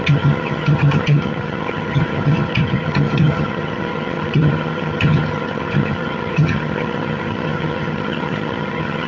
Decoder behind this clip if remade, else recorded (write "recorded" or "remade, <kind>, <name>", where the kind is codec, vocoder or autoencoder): remade, vocoder, HiFi-GAN